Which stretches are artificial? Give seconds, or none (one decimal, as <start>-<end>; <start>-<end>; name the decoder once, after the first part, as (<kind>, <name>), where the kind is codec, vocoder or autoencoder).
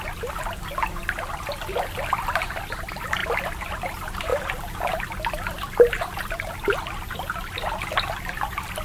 0.0-4.3 (vocoder, BigVGAN v2); 4.9-8.8